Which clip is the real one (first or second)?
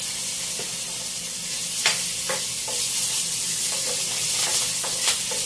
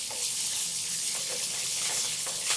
first